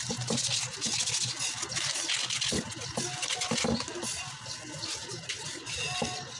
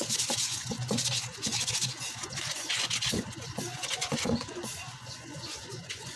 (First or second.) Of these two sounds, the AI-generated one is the second